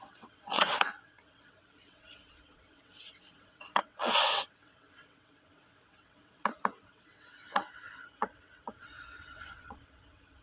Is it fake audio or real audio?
fake